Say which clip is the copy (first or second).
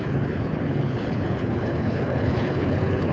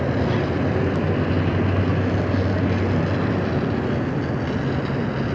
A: first